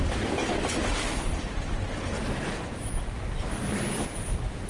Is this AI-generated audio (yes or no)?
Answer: yes